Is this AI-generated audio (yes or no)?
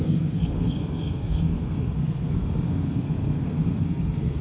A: yes